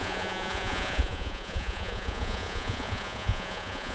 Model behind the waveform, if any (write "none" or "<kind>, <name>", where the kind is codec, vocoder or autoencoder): vocoder, Vocos